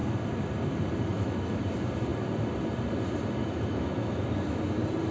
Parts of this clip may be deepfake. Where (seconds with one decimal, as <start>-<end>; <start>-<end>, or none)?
1.1-1.6; 3.4-4.6